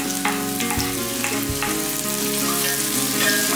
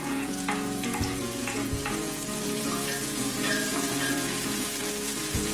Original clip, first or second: first